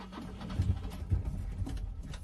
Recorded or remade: recorded